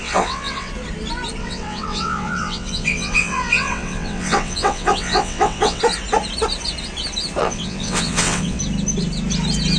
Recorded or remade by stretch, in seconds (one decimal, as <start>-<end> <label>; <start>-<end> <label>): 0.0-0.7 remade; 0.7-1.4 recorded; 1.4-5.8 remade; 5.8-7.4 recorded; 7.4-8.6 remade; 8.6-9.8 recorded